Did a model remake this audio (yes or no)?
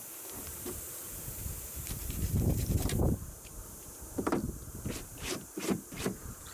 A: yes